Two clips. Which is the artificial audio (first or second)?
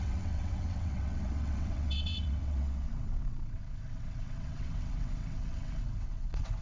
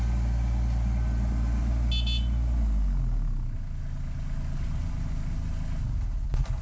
first